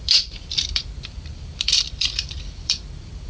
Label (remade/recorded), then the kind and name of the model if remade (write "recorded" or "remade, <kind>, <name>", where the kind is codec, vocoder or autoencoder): remade, vocoder, BigVGAN v2